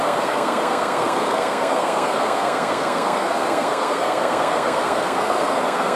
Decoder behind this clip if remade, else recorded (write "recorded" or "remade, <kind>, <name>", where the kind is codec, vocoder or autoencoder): remade, codec, SNAC